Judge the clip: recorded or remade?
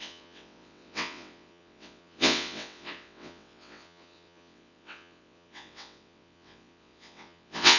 remade